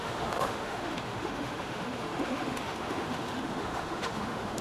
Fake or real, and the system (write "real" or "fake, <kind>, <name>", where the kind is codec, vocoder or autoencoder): fake, autoencoder, DAC-VAE